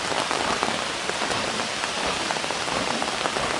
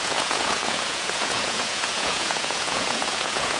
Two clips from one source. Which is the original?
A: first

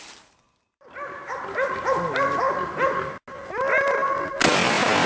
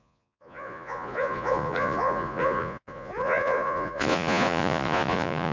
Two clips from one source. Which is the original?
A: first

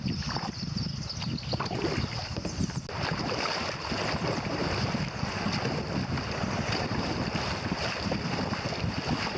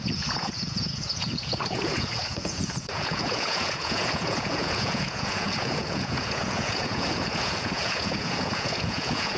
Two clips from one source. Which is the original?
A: first